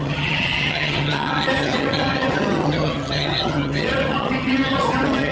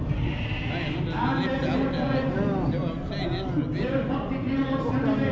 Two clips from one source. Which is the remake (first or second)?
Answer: first